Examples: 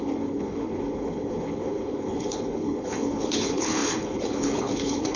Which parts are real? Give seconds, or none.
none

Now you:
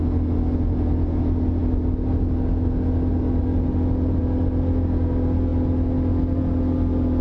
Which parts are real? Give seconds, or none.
0.0-7.2

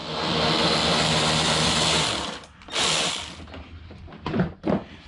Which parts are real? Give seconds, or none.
0.0-5.1